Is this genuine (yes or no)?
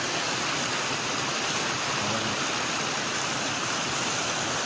yes